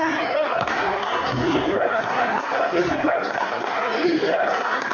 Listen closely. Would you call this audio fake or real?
fake